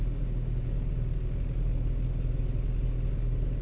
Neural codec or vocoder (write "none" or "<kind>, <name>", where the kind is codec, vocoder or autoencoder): none